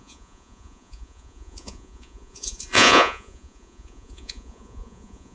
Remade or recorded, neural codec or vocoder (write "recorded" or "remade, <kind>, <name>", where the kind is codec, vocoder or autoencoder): remade, vocoder, Vocos